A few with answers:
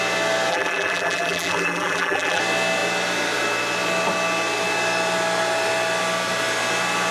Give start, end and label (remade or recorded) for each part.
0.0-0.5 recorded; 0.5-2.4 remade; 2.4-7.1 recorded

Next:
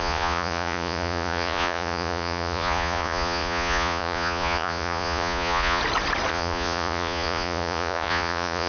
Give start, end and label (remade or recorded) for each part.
0.0-5.8 remade; 5.8-6.3 recorded; 6.3-8.7 remade

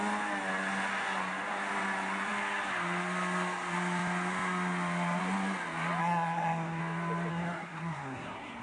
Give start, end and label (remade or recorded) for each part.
0.0-6.0 recorded; 6.0-6.8 remade; 6.8-7.3 recorded; 7.3-8.6 remade

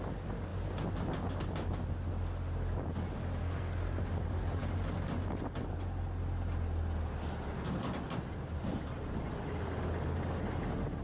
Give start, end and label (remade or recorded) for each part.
0.0-3.4 recorded; 3.4-4.0 remade; 4.0-11.0 recorded

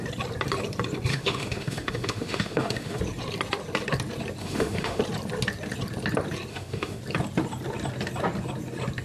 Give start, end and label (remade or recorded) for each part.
0.0-1.1 recorded; 1.1-3.0 remade; 3.0-4.4 recorded; 4.4-5.0 remade; 5.0-6.5 recorded; 6.5-7.0 remade; 7.0-9.0 recorded

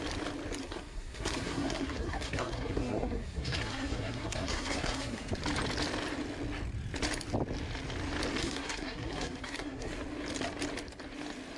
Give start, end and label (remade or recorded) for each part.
0.0-0.6 recorded; 0.6-5.3 remade; 5.3-8.4 recorded; 8.4-9.9 remade; 9.9-11.6 recorded